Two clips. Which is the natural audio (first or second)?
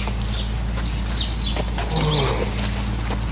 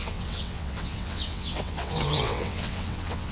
first